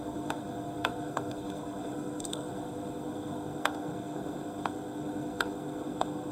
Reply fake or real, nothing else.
fake